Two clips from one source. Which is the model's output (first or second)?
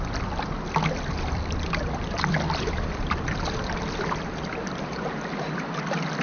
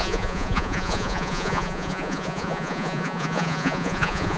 second